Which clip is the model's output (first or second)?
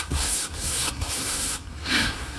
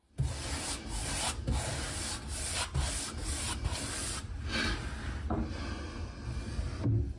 first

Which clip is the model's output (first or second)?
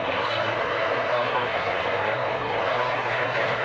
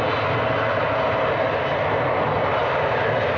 first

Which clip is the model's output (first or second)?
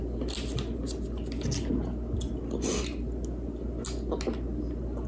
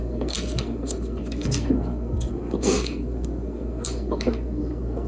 second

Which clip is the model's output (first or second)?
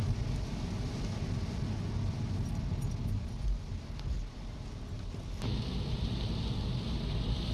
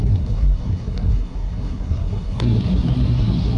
second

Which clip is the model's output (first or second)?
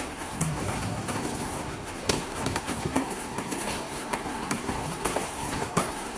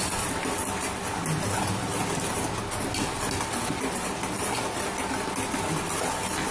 first